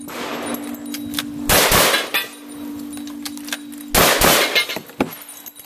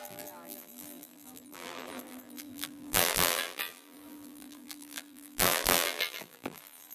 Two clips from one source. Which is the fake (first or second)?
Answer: second